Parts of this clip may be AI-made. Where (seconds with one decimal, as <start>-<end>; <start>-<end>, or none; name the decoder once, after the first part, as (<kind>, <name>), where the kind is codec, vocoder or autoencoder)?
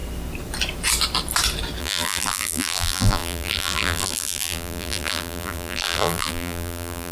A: 1.8-7.1 (vocoder, BigVGAN v2)